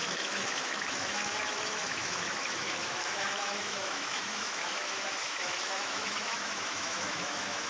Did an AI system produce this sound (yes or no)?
yes